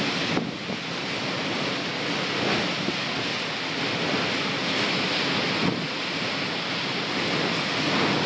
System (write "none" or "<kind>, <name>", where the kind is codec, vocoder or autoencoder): none